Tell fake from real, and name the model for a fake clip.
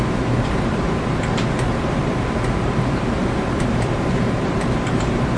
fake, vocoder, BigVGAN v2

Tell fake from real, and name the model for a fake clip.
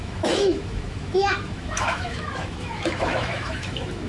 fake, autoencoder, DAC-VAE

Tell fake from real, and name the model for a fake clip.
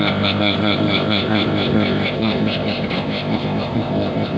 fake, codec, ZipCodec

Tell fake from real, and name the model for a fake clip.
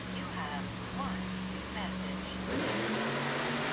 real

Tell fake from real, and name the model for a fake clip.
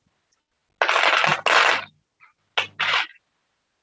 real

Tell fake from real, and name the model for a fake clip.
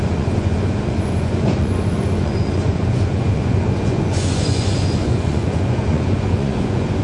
fake, vocoder, Vocos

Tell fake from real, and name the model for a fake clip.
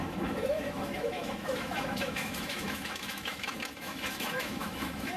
fake, autoencoder, DAC-VAE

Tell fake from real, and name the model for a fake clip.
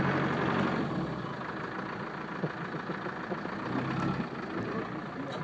real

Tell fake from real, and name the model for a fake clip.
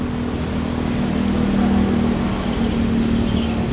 real